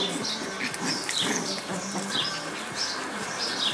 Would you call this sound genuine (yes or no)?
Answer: yes